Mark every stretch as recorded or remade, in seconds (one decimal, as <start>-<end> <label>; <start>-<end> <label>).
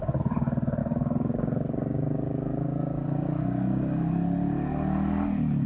0.0-0.8 recorded; 0.8-4.1 remade; 4.1-5.7 recorded